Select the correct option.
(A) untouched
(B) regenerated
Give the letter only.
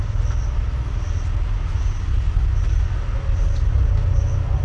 A